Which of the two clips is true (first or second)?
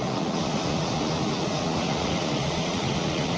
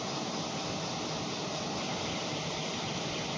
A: second